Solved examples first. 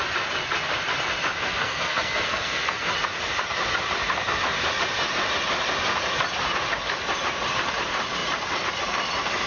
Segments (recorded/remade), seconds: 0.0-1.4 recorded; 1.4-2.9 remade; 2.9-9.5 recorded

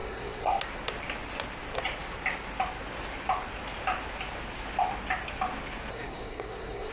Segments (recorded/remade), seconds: 0.0-0.6 remade; 0.6-5.9 recorded; 5.9-6.9 remade